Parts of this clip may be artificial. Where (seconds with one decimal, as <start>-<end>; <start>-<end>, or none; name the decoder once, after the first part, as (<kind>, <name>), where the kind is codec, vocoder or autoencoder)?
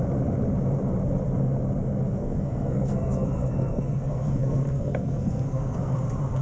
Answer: 2.2-6.0 (codec, SNAC)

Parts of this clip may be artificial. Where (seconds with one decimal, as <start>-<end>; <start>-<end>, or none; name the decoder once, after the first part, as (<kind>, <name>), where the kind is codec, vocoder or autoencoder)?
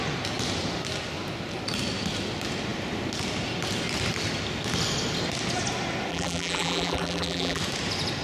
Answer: 6.1-7.6 (vocoder, BigVGAN v2)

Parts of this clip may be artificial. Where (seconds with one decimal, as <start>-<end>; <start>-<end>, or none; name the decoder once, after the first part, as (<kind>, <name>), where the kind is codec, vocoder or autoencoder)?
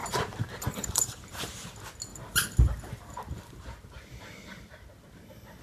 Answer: 0.0-1.7 (vocoder, BigVGAN v2); 2.1-4.9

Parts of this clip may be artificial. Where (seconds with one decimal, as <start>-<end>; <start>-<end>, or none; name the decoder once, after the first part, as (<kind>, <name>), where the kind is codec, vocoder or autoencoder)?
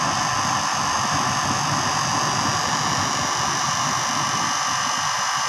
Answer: none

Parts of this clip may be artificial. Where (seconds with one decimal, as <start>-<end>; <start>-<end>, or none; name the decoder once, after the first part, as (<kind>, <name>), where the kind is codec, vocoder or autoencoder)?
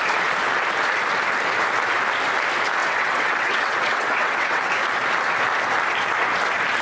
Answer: 2.8-4.7 (vocoder, WaveNeXt)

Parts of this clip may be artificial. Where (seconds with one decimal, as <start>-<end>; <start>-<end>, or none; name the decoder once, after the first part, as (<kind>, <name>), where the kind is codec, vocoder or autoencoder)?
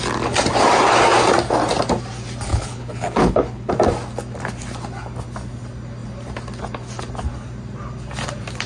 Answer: 2.5-3.7 (codec, HILCodec)